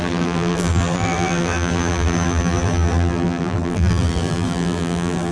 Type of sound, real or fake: fake